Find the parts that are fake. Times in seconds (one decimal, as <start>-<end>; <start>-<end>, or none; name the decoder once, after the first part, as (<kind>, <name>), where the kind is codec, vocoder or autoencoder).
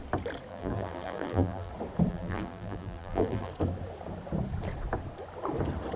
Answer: 0.5-1.7 (vocoder, BigVGAN v2); 2.1-3.5